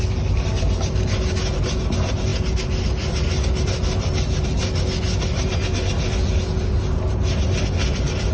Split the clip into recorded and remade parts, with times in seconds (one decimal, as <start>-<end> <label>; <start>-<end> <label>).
0.0-8.3 recorded